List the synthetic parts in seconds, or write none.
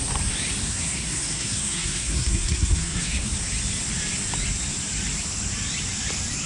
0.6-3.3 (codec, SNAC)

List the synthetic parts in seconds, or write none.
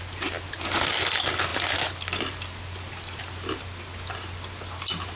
none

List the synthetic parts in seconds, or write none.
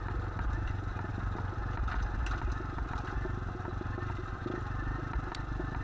none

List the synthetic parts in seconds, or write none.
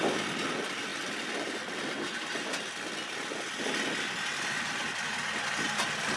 none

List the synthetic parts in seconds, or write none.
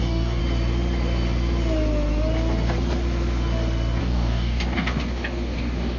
0.0-0.4 (codec, DAC); 4.0-6.0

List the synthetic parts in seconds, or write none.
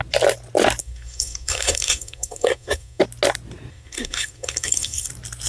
0.8-3.0 (codec, SNAC); 3.7-5.1